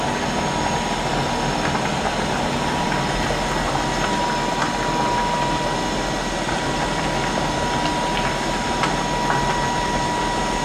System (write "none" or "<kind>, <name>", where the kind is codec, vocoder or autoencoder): none